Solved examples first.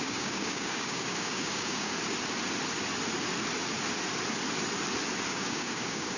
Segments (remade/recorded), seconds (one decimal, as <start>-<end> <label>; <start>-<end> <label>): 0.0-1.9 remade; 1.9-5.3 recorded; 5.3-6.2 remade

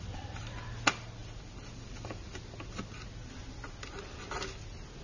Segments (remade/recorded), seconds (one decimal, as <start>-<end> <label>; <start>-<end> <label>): 0.0-5.0 recorded

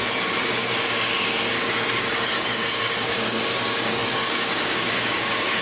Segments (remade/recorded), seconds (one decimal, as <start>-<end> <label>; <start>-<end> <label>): 0.0-5.6 remade

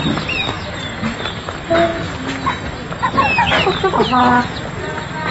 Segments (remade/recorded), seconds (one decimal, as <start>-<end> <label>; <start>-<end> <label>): 0.0-5.3 recorded

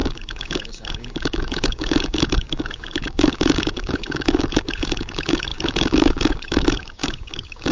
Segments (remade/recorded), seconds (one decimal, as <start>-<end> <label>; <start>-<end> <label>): 0.0-7.7 remade

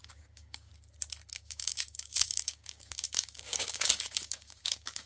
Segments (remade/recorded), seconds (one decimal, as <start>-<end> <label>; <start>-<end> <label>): 0.0-0.7 remade; 0.7-1.3 recorded; 1.3-5.1 remade

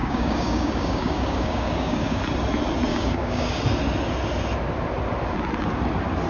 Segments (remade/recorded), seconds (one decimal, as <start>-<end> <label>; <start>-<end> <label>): 0.0-2.2 remade; 2.2-2.9 recorded; 2.9-3.6 remade; 3.6-6.3 recorded